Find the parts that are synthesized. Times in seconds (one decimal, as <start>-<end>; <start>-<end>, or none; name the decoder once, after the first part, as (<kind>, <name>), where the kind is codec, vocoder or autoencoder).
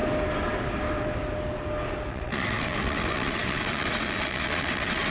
2.1-5.1 (vocoder, WaveNeXt)